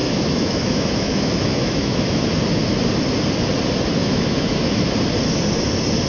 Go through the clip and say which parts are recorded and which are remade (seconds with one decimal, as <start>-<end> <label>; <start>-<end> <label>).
0.0-2.2 remade; 2.2-4.0 recorded; 4.0-4.8 remade; 4.8-6.1 recorded